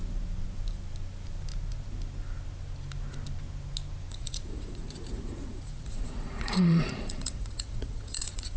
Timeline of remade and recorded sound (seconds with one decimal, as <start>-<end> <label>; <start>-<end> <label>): 0.0-4.1 recorded; 4.1-8.6 remade